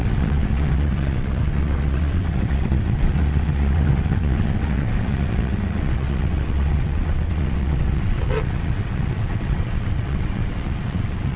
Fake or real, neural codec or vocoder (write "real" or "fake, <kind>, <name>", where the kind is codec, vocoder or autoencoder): fake, vocoder, WaveNeXt